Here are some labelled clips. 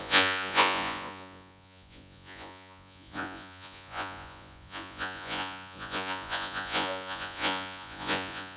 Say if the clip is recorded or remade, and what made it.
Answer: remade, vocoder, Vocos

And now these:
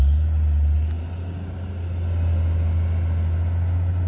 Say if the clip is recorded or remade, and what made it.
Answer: recorded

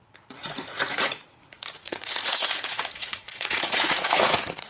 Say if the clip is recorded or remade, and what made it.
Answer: remade, vocoder, Vocos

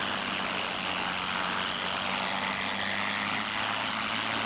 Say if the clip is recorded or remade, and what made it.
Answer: recorded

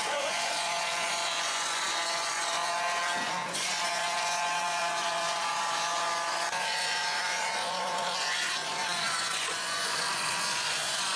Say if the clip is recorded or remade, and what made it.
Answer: remade, vocoder, Vocos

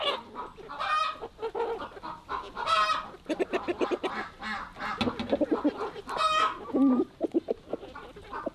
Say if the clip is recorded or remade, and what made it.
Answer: recorded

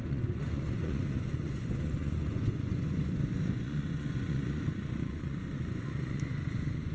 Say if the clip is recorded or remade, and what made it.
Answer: remade, vocoder, Vocos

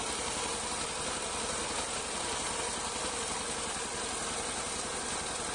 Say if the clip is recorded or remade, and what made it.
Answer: recorded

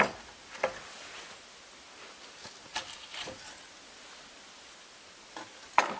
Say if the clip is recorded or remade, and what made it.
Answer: recorded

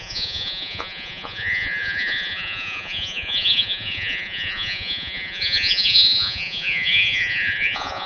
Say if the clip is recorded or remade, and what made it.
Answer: remade, vocoder, Vocos